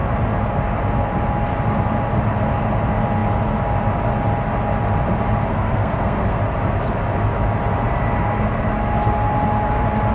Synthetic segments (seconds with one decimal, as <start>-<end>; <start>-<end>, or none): 5.5-6.4